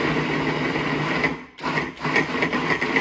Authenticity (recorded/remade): recorded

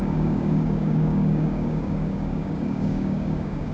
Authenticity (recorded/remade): remade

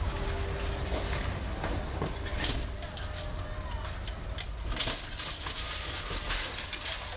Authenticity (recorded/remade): recorded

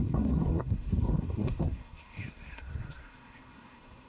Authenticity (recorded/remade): remade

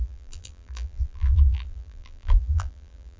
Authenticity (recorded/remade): remade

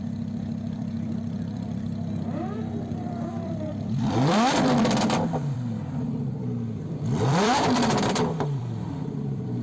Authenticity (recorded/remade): remade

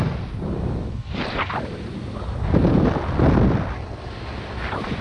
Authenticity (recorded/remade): recorded